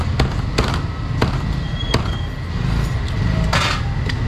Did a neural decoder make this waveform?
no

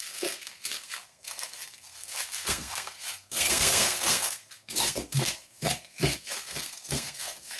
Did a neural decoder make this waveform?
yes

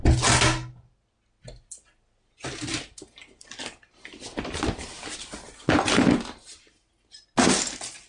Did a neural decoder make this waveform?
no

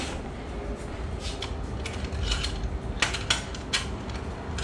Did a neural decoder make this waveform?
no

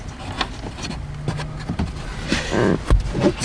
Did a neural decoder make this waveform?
no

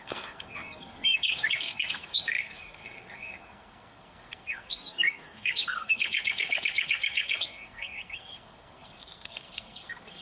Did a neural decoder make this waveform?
yes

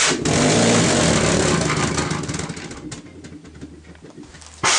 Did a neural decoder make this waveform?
no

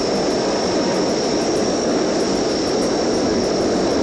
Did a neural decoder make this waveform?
no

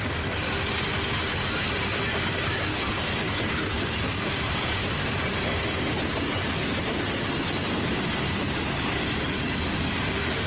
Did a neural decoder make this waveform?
no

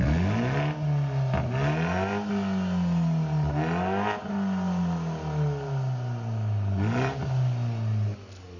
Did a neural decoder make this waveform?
no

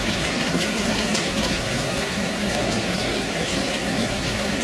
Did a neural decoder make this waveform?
yes